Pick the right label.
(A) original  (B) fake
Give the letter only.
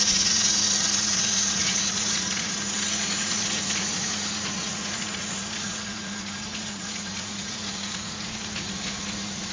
B